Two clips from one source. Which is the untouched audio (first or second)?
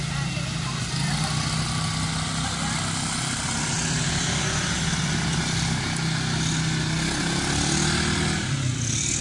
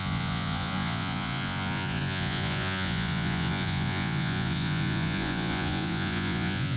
first